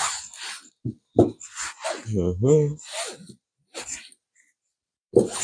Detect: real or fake real